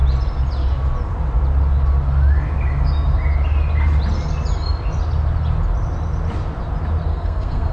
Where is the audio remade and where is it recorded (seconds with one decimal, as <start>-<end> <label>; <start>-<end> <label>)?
0.0-7.1 recorded; 7.1-7.7 remade